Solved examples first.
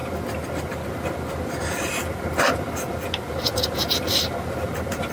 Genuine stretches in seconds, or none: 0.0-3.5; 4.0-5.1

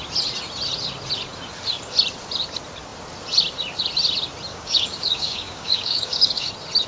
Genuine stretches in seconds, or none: 0.0-4.5; 6.5-6.9

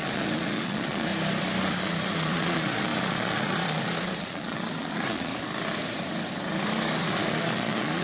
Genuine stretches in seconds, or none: 1.1-1.7; 5.3-7.0

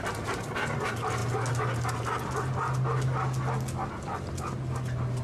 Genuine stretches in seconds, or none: 0.0-5.2

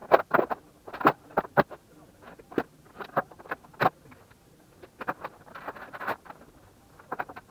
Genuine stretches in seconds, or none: 0.0-7.5